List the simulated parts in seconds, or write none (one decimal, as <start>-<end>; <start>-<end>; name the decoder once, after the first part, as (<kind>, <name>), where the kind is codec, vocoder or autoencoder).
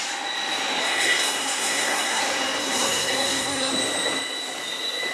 0.8-2.2 (codec, SNAC); 2.6-3.7